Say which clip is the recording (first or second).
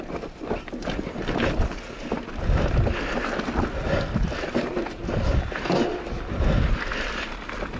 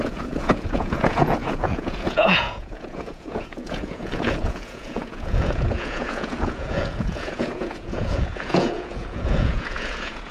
first